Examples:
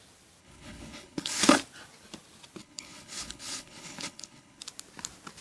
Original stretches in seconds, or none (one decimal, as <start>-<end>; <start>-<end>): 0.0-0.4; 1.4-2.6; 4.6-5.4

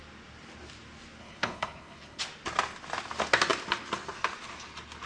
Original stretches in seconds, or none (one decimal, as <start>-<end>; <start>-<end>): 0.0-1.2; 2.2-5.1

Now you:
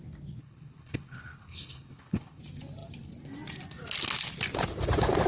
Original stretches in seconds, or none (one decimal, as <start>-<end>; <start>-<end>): 0.0-0.4; 2.4-5.3

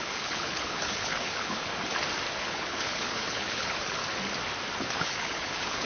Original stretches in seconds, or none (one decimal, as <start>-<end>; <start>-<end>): 1.7-2.4; 4.0-4.8

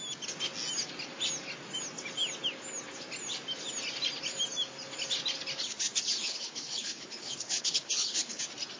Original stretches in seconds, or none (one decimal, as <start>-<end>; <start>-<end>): 0.0-6.2; 8.4-8.8